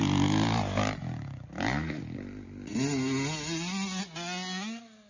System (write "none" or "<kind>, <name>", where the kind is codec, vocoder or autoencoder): none